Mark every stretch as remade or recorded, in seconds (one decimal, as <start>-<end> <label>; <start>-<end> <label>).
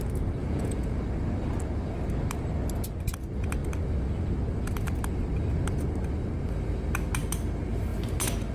0.0-0.4 recorded; 0.4-1.0 remade; 1.0-8.5 recorded